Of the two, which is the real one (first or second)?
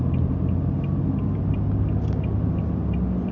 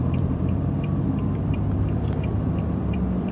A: first